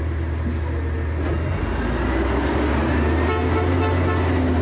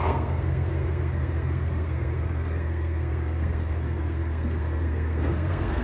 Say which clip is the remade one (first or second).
second